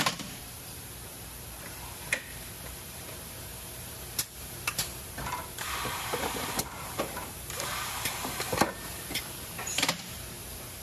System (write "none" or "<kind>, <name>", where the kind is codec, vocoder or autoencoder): vocoder, BigVGAN v2